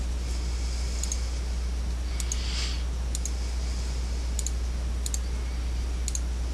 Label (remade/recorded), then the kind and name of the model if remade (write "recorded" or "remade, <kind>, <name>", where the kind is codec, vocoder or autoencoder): recorded